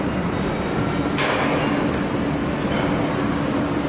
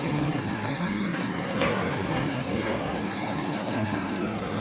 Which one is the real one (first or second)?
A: first